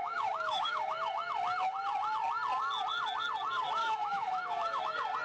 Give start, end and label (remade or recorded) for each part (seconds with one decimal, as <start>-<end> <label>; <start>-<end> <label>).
0.0-1.0 remade; 1.0-3.8 recorded; 3.8-4.8 remade; 4.8-5.2 recorded